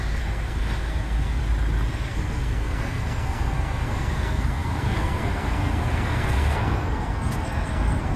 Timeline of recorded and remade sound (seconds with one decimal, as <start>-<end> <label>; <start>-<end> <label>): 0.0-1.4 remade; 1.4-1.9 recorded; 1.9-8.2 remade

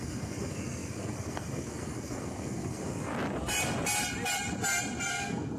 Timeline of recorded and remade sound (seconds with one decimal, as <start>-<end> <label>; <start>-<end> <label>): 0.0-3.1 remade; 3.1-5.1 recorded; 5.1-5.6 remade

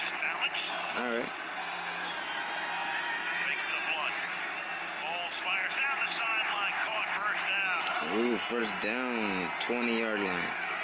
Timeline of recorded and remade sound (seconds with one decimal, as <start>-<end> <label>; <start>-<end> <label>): 0.0-1.6 recorded; 1.6-2.1 remade; 2.1-10.8 recorded